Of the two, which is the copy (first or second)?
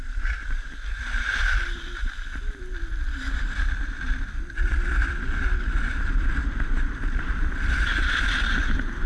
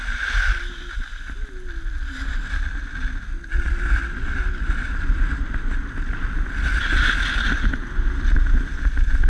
first